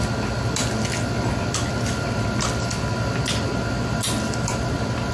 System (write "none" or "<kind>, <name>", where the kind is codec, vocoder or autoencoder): none